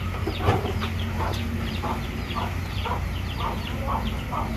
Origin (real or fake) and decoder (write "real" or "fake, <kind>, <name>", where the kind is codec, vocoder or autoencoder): fake, vocoder, BigVGAN v2